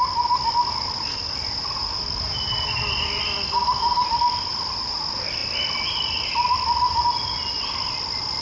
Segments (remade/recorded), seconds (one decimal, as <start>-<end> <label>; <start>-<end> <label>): 0.0-8.4 recorded